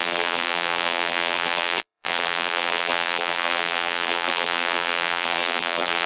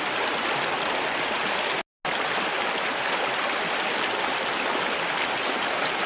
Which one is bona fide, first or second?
second